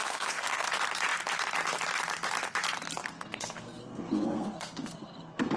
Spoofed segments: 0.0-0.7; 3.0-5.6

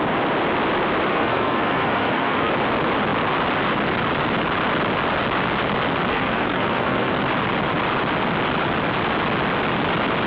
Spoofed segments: 1.1-2.5; 6.1-7.2